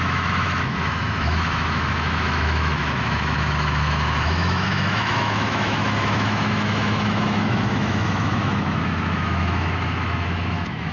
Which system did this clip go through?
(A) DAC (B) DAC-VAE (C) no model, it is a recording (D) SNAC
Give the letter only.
B